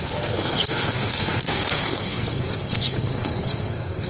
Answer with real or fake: fake